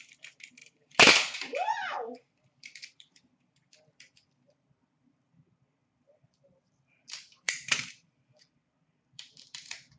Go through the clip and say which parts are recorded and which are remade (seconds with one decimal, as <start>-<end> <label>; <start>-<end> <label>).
0.0-0.6 recorded; 0.6-5.3 remade; 5.3-5.8 recorded; 5.8-10.0 remade